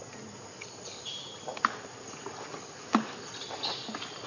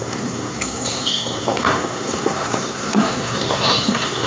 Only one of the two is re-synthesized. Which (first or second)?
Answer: second